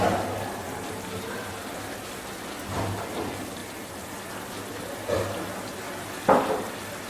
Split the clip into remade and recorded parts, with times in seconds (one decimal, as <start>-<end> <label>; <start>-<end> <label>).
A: 0.0-0.6 recorded; 0.6-1.5 remade; 1.5-7.1 recorded